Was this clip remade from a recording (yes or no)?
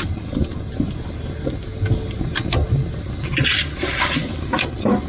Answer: no